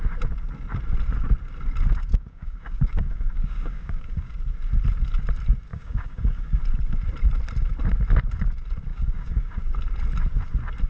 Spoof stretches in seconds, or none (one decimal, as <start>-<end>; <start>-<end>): 2.1-4.3; 5.7-6.6; 8.9-9.6